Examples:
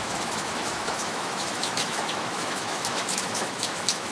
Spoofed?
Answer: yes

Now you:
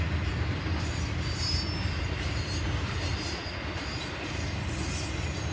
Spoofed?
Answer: no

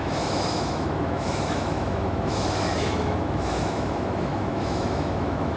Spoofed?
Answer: yes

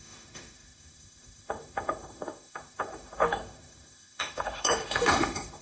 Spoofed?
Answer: yes